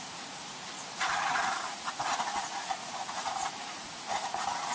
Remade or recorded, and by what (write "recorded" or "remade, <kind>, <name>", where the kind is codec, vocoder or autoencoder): remade, vocoder, Vocos